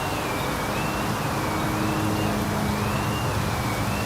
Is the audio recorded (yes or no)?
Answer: yes